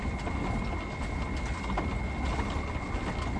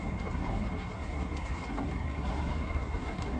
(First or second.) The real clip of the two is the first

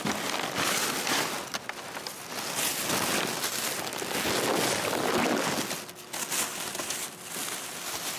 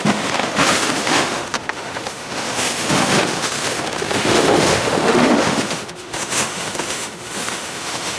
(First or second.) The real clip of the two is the first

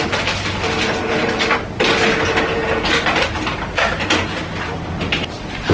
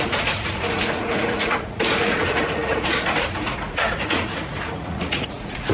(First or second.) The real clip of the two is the first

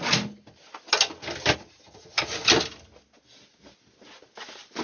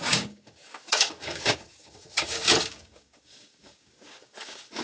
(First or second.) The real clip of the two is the first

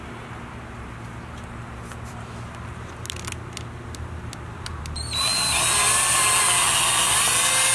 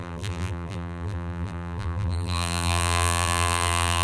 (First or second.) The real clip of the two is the first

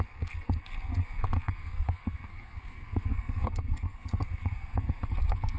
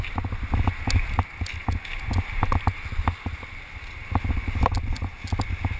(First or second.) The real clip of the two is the second